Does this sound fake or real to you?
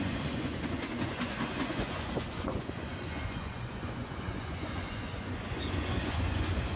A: fake